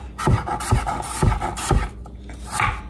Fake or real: real